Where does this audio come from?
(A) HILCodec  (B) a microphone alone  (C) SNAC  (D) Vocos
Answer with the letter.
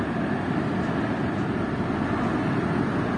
B